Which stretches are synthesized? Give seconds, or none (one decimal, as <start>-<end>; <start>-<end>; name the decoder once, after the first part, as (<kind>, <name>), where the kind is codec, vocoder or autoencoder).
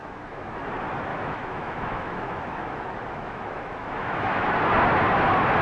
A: 0.0-0.6 (autoencoder, DAC-VAE); 1.1-4.5